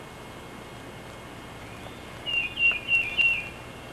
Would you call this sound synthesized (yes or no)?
no